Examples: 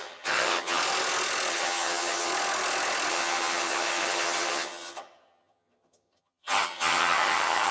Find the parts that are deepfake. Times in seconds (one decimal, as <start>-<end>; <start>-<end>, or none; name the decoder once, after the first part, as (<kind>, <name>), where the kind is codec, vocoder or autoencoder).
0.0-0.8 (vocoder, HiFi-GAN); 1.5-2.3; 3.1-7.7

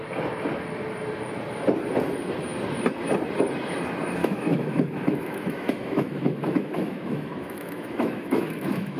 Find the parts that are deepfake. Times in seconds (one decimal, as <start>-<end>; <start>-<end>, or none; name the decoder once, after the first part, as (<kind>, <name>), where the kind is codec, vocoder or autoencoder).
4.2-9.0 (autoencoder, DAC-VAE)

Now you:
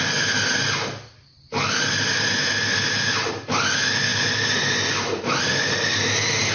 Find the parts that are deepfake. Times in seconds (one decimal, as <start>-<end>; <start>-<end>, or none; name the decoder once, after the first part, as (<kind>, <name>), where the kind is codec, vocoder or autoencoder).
none